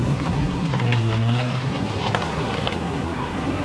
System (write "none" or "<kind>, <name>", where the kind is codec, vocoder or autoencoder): codec, SNAC